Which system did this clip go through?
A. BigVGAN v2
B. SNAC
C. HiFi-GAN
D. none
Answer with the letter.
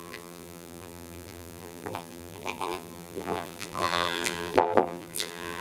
A